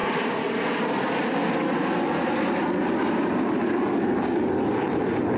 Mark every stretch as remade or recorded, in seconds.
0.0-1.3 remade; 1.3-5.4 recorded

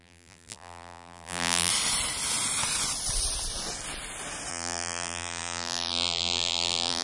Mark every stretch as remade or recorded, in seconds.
0.0-1.7 remade; 1.7-4.5 recorded; 4.5-7.0 remade